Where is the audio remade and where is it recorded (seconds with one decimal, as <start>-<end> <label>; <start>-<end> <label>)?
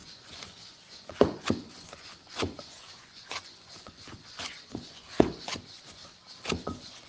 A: 0.0-6.0 remade; 6.0-6.6 recorded; 6.6-7.1 remade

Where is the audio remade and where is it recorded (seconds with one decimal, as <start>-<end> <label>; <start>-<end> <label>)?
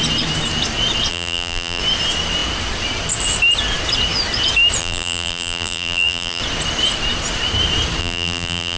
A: 0.0-1.1 recorded; 1.1-1.8 remade; 1.8-4.8 recorded; 4.8-6.4 remade; 6.4-8.0 recorded; 8.0-8.8 remade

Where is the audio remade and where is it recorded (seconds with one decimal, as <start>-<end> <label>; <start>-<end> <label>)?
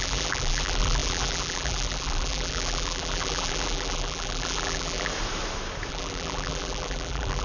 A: 0.0-5.1 remade; 5.1-5.9 recorded; 5.9-7.4 remade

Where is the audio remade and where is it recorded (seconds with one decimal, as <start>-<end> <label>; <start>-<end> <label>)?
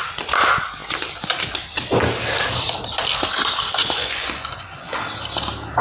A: 0.0-3.8 recorded; 3.8-4.9 remade; 4.9-5.8 recorded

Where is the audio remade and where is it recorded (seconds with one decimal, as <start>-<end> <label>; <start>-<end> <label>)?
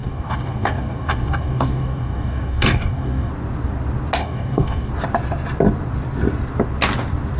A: 0.0-3.3 remade; 3.3-4.2 recorded; 4.2-4.9 remade; 4.9-7.4 recorded